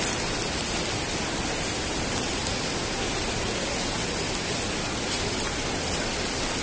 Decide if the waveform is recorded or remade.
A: recorded